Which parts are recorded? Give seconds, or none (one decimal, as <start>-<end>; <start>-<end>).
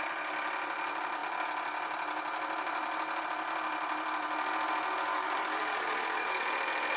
0.0-5.1; 6.4-7.0